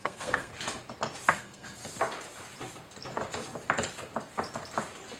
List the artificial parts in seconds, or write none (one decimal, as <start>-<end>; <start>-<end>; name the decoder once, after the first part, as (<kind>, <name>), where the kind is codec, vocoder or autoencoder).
0.0-0.5 (codec, SNAC); 1.3-1.8